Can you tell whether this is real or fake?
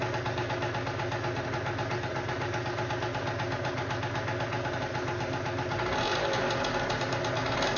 real